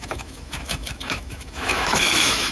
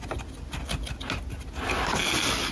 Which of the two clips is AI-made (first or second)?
first